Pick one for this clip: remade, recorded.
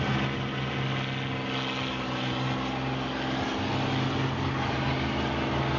recorded